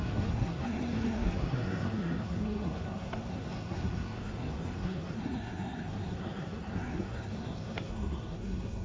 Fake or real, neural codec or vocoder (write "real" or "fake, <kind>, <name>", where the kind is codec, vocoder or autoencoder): fake, codec, SNAC